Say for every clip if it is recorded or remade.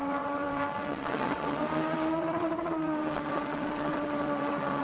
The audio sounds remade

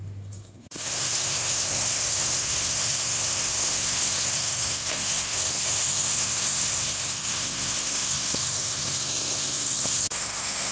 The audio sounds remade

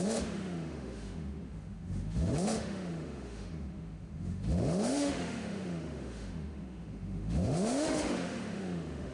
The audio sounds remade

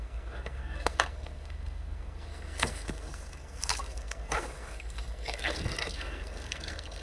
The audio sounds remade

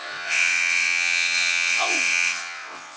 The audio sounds remade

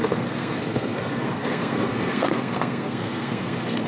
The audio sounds remade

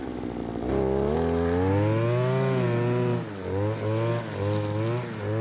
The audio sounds recorded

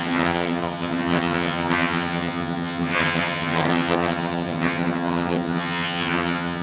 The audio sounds remade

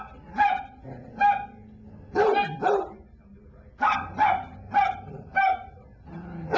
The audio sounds recorded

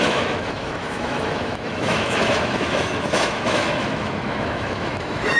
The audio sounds remade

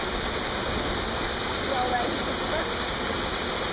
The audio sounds recorded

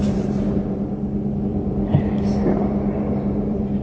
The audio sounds remade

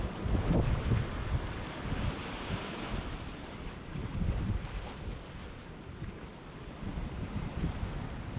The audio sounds recorded